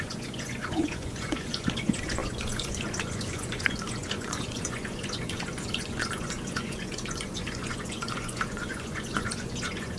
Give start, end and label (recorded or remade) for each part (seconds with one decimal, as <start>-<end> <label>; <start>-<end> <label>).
0.0-10.0 remade